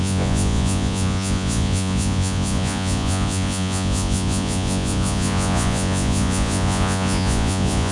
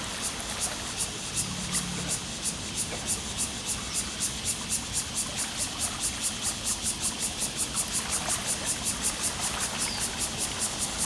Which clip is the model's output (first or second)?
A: first